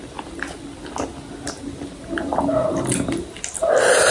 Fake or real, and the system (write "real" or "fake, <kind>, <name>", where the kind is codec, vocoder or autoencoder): real